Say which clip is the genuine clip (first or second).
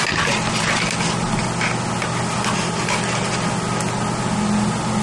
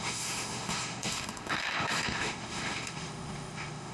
first